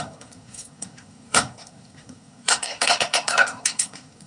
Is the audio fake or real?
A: fake